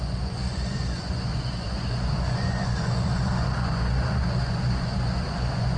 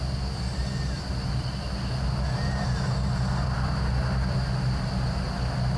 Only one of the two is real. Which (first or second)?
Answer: second